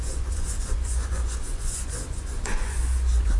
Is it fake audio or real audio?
fake